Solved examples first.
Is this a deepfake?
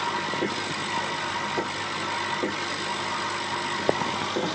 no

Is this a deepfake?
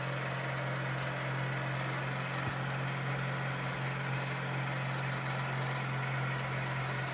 no